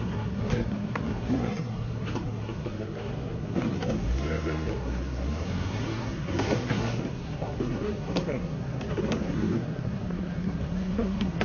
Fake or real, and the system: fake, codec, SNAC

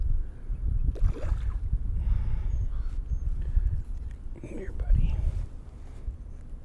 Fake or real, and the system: real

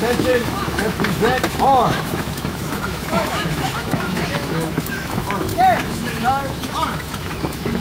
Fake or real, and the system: fake, autoencoder, DAC-VAE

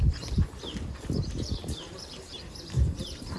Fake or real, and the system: fake, vocoder, BigVGAN v2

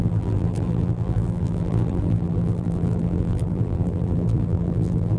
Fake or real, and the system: fake, vocoder, BigVGAN v2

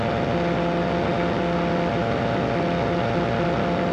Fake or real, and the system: real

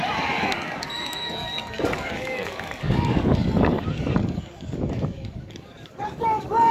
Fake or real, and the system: fake, codec, DAC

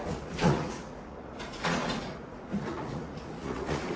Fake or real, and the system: fake, vocoder, Vocos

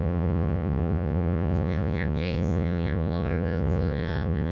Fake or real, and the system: fake, vocoder, Vocos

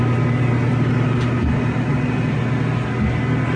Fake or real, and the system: real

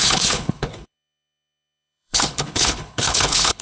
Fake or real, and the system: fake, codec, HILCodec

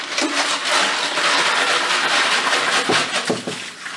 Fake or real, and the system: real